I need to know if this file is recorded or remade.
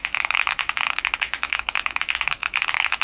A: remade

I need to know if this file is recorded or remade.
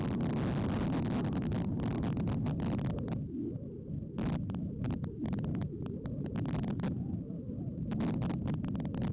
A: recorded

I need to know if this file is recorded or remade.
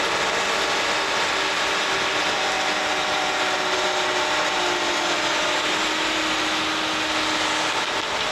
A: recorded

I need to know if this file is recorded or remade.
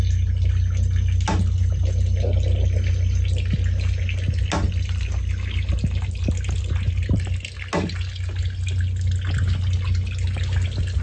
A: recorded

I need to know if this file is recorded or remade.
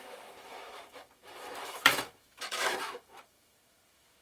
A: remade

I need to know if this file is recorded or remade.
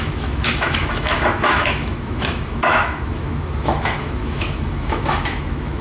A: remade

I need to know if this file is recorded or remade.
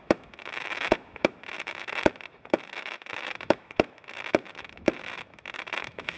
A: remade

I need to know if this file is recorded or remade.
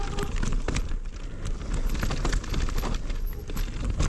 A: recorded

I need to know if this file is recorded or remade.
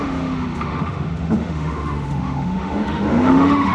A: remade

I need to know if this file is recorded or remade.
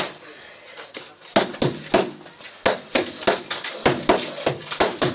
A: recorded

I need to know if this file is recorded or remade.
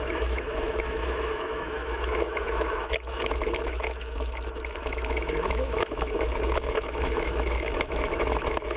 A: remade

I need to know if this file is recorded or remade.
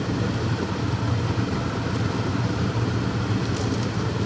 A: recorded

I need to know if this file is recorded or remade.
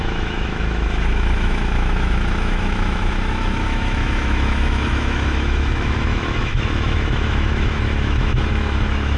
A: remade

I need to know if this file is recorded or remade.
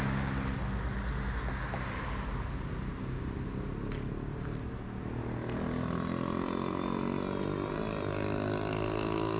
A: recorded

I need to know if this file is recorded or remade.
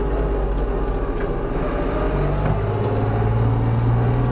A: recorded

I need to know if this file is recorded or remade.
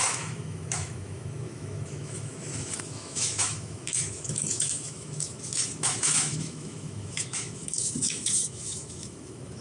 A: remade